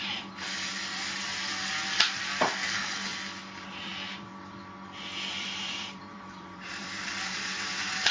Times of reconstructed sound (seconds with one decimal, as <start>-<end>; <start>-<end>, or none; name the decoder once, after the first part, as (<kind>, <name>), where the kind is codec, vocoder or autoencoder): 0.0-1.3 (vocoder, BigVGAN v2); 3.4-3.9; 5.6-8.1